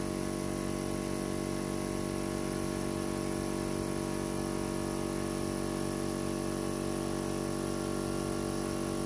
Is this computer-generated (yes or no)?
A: no